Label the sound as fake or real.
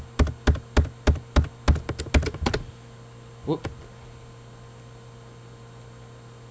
real